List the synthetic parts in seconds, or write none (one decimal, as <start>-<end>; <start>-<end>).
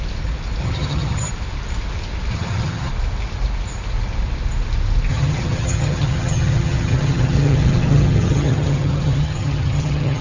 0.6-1.3; 2.3-2.9; 5.1-10.2